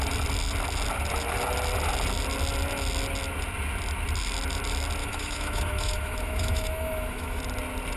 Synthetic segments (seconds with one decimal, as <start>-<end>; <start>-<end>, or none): 5.0-7.4